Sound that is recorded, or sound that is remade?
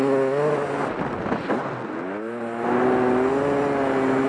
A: recorded